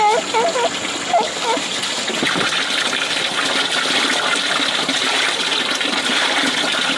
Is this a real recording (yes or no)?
yes